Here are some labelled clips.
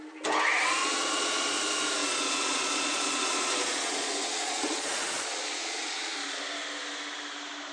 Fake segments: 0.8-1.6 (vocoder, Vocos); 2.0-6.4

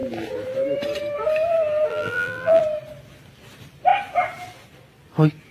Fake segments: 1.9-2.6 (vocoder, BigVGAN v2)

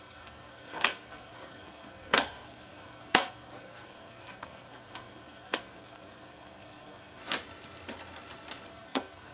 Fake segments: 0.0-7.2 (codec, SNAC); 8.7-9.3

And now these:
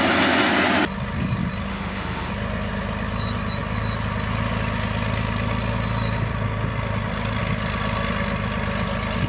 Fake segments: 1.7-2.3 (autoencoder, DAC-VAE)

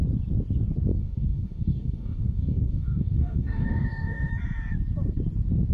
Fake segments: 0.9-4.3 (codec, DAC)